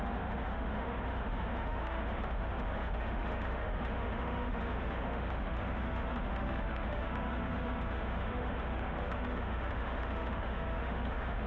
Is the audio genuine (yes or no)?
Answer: no